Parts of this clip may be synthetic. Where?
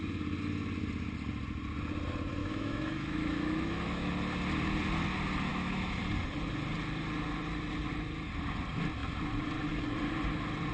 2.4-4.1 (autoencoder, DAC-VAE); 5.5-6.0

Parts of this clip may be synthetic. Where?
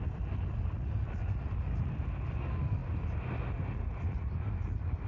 none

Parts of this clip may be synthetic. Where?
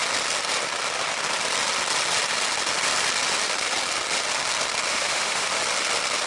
4.9-5.5 (autoencoder, DAC-VAE)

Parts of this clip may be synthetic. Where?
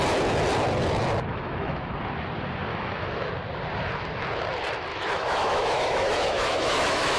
1.3-1.9 (autoencoder, DAC-VAE); 2.7-3.3; 4.9-7.2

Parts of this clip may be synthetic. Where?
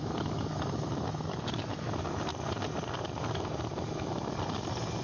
0.0-2.3 (autoencoder, DAC-VAE)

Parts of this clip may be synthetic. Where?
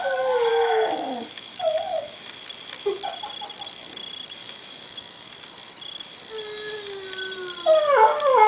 0.5-2.2 (autoencoder, DAC-VAE); 4.4-5.3